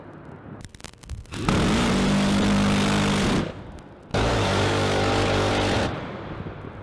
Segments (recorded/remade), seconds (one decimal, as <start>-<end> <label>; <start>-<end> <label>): 0.0-4.1 recorded; 4.1-5.5 remade; 5.5-6.8 recorded